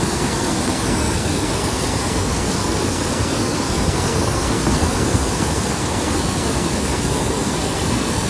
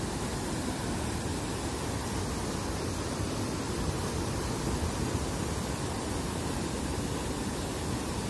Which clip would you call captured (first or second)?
second